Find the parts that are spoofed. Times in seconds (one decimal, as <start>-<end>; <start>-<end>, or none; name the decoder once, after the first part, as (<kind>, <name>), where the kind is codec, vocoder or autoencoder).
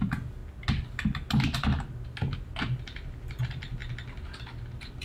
0.0-0.4 (vocoder, BigVGAN v2); 3.4-3.8